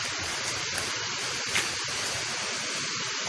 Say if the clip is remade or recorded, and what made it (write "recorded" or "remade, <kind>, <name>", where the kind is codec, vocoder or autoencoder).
recorded